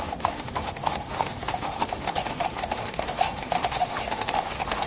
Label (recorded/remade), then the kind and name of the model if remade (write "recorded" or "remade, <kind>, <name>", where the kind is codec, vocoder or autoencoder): remade, autoencoder, DAC-VAE